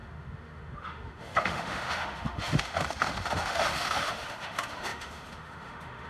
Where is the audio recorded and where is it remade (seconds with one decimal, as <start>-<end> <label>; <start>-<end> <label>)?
0.0-6.1 remade